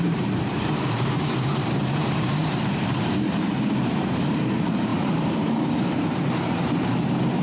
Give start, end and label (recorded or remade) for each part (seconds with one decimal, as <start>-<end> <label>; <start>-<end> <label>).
0.0-7.4 remade